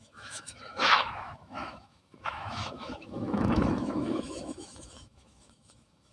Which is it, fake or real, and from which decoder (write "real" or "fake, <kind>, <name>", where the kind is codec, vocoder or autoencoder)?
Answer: fake, autoencoder, DAC-VAE